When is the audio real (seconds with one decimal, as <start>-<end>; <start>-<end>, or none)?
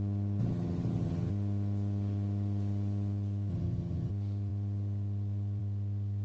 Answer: 0.0-0.4; 1.3-3.5; 4.1-6.2